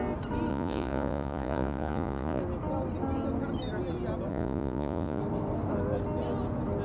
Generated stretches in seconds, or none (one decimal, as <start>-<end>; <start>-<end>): 0.5-2.4; 4.3-5.2